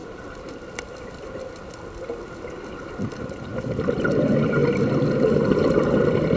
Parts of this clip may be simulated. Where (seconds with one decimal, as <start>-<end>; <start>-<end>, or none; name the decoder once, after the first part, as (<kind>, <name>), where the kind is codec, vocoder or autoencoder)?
0.0-1.5 (vocoder, BigVGAN v2); 3.5-4.1; 4.6-5.1